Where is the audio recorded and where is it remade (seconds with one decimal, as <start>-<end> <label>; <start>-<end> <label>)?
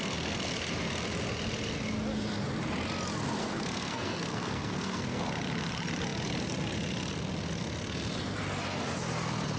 0.0-3.4 recorded; 3.4-5.2 remade; 5.2-9.6 recorded